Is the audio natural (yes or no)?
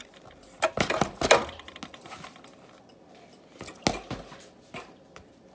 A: yes